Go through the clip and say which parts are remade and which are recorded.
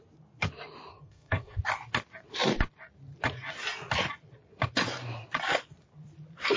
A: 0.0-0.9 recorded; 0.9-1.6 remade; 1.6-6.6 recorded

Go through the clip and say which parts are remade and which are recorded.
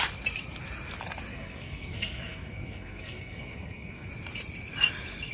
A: 0.0-1.3 recorded; 1.3-4.1 remade; 4.1-5.3 recorded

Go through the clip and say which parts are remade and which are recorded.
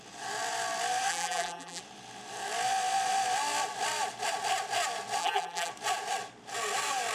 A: 0.0-1.1 recorded; 1.1-1.8 remade; 1.8-5.2 recorded; 5.2-5.7 remade; 5.7-7.1 recorded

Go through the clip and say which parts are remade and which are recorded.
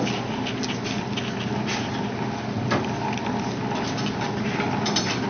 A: 0.0-5.3 recorded